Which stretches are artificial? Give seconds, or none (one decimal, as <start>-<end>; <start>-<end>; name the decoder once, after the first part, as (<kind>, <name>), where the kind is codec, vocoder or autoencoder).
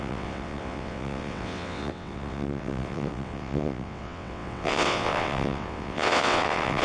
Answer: 0.0-6.8 (vocoder, WaveNeXt)